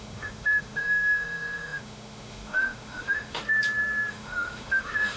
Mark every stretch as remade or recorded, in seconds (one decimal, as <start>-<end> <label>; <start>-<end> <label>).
0.0-3.4 remade; 3.4-4.1 recorded; 4.1-5.2 remade